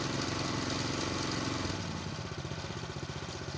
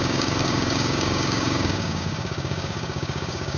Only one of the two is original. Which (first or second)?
first